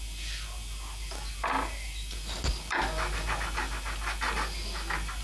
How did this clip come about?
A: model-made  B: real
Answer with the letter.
B